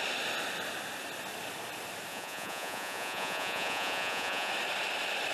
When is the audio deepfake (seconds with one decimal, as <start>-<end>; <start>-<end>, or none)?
2.1-4.5